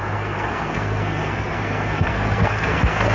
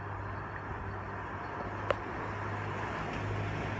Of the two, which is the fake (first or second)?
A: first